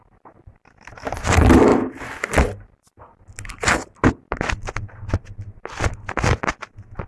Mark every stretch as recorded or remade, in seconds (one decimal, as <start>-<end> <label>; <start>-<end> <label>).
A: 0.0-7.1 recorded